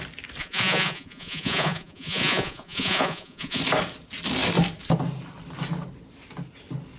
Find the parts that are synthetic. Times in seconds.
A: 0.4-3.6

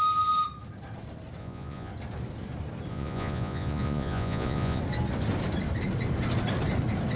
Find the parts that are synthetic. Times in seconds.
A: 1.4-1.9; 2.9-4.8

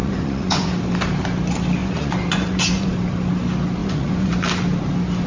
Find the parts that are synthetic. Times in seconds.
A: 0.0-0.7; 1.8-2.9; 3.8-4.3